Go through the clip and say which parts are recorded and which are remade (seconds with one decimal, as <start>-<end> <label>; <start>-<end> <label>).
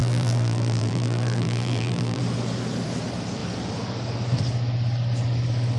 0.0-2.2 remade; 2.2-5.8 recorded